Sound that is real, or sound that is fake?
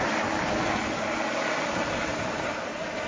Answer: real